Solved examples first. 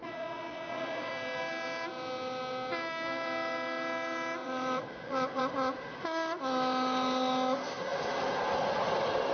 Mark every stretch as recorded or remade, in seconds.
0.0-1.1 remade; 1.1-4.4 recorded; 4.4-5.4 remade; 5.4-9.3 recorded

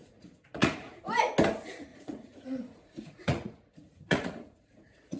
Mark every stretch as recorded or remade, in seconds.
0.0-1.0 remade; 1.0-1.9 recorded; 1.9-5.2 remade

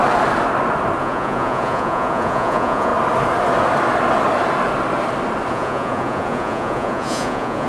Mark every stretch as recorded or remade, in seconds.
0.0-1.0 recorded; 1.0-2.9 remade; 2.9-5.5 recorded; 5.5-7.7 remade